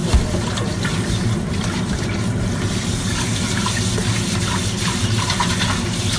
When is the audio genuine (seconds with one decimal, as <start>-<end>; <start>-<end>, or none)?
2.9-6.2